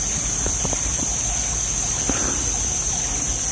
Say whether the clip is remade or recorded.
recorded